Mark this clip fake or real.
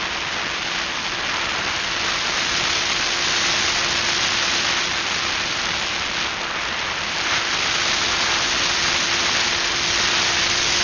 real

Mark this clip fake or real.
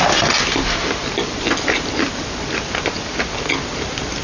real